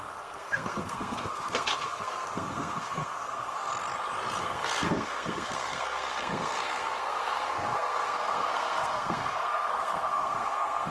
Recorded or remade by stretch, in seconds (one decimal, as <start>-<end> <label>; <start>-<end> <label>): 0.0-3.7 remade; 3.7-4.4 recorded; 4.4-10.9 remade